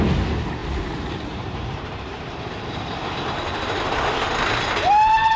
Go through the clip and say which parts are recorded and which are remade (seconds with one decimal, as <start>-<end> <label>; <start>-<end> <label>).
0.0-0.6 recorded; 0.6-3.8 remade; 3.8-5.4 recorded